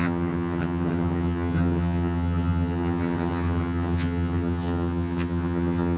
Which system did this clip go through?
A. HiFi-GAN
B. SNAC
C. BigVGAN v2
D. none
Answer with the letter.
A